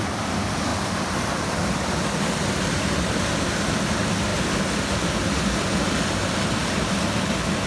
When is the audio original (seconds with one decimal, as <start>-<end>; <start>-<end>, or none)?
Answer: 0.0-7.7